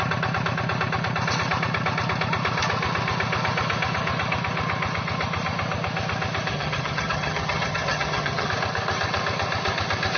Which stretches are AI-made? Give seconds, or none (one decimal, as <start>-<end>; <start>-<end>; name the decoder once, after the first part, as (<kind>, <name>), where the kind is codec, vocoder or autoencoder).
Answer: 6.5-8.5 (vocoder, HiFi-GAN)